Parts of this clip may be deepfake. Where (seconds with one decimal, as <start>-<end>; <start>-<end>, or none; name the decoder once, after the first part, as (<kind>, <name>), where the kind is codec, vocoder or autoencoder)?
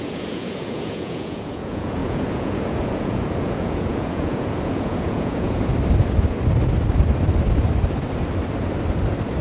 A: 0.0-5.7 (vocoder, Vocos)